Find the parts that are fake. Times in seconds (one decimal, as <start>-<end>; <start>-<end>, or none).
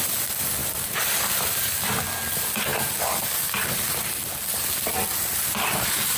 0.6-1.7